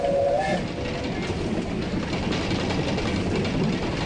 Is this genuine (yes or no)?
yes